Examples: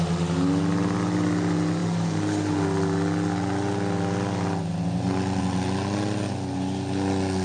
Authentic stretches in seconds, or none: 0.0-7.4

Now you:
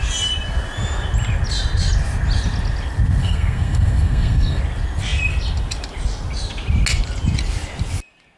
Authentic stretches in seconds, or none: 0.0-3.2; 4.6-8.4

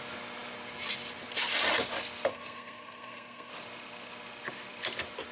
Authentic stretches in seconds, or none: 0.0-2.3; 3.5-5.3

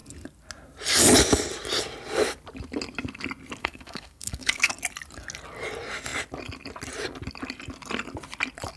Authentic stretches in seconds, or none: 0.0-3.6; 4.7-8.8

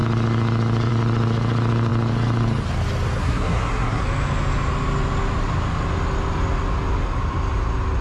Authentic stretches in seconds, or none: 0.0-3.2; 4.0-8.0